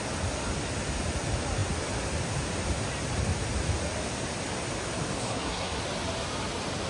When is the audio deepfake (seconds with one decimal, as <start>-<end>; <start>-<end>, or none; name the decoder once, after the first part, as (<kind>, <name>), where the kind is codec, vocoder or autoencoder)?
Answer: 5.2-5.8 (codec, SNAC)